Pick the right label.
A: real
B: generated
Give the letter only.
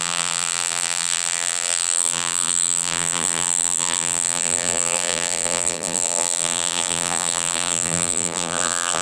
B